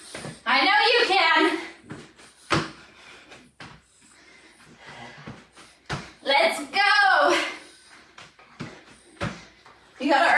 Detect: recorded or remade remade